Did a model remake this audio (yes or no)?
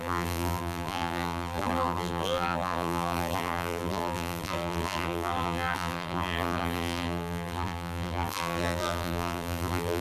yes